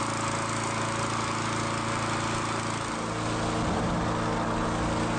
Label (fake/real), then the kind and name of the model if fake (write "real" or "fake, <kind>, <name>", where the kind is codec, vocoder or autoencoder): real